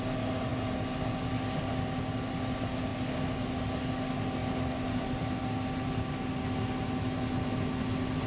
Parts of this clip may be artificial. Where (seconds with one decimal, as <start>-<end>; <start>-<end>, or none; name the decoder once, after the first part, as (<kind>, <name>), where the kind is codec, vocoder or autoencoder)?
none